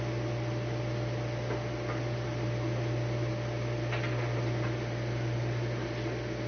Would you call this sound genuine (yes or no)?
yes